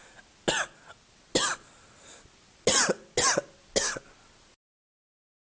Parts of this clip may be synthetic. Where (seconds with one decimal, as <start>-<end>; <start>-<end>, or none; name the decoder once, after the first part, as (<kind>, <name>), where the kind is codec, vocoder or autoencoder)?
none